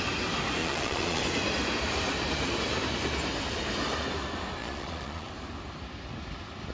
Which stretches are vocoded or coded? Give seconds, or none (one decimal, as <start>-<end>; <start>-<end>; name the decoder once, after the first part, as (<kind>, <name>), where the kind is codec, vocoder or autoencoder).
0.6-1.2 (vocoder, Vocos); 4.6-5.3